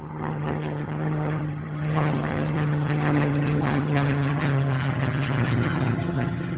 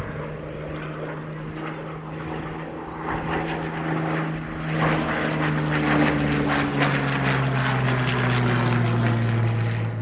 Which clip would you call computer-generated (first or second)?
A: first